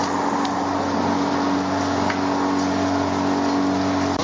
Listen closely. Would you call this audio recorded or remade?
recorded